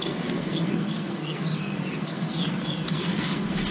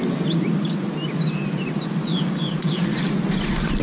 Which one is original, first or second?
second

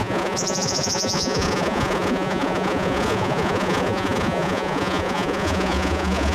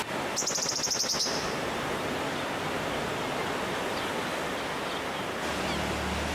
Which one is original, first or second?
second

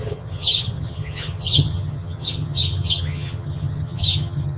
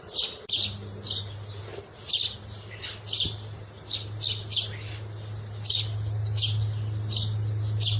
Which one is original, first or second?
second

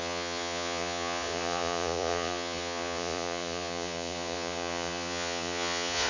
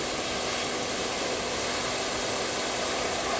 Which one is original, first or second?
second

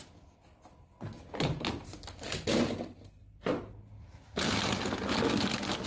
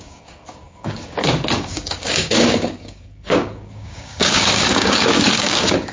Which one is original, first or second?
first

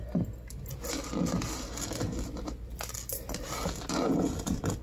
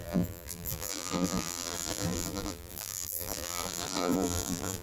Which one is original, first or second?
first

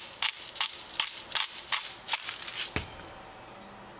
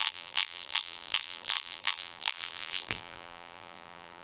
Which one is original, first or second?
first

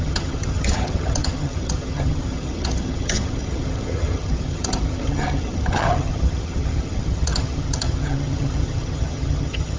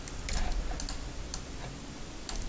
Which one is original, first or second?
second